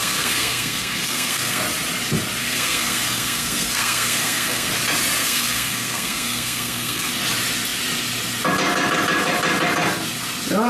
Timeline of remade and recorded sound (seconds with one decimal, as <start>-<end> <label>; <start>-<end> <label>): 0.0-1.6 remade; 1.6-2.4 recorded; 2.4-4.7 remade; 4.7-5.2 recorded; 5.2-7.1 remade; 7.1-10.7 recorded

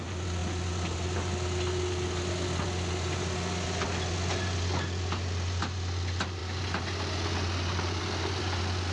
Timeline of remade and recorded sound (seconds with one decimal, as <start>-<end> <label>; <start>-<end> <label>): 0.0-8.9 recorded

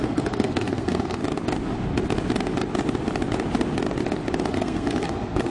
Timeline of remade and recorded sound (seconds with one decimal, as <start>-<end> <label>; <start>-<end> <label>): 0.0-1.2 remade; 1.2-4.5 recorded; 4.5-5.5 remade

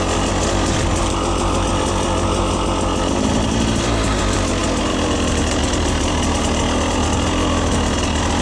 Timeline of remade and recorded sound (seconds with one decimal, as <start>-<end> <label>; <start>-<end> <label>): 0.0-8.4 recorded

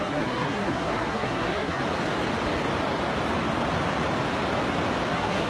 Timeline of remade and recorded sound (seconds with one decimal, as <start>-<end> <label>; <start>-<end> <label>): 0.0-1.8 remade; 1.8-5.1 recorded; 5.1-5.5 remade

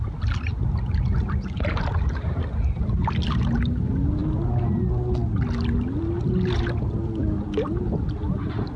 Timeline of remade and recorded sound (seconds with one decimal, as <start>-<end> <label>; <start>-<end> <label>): 0.0-8.8 recorded

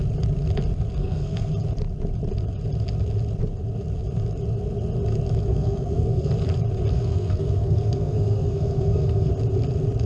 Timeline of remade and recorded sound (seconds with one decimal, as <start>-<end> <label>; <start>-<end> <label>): 0.0-1.0 recorded; 1.0-1.5 remade; 1.5-5.5 recorded; 5.5-6.3 remade; 6.3-6.9 recorded; 6.9-9.3 remade; 9.3-10.1 recorded